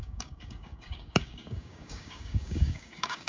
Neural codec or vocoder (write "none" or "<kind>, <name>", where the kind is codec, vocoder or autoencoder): codec, DAC